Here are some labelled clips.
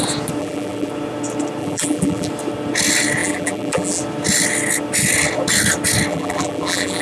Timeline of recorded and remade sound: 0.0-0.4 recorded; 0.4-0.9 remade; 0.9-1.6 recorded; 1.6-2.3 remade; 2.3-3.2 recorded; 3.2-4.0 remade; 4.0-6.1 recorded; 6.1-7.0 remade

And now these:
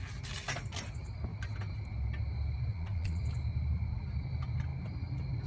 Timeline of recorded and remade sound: 0.0-2.7 recorded; 2.7-3.2 remade; 3.2-5.5 recorded

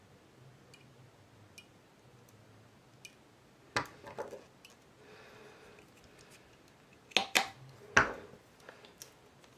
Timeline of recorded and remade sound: 0.0-9.6 recorded

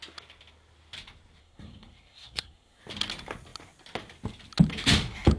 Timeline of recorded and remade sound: 0.0-1.4 recorded; 1.4-2.8 remade; 2.8-5.4 recorded

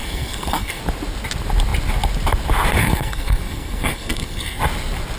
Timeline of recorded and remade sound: 0.0-0.8 remade; 0.8-2.8 recorded; 2.8-4.6 remade; 4.6-5.2 recorded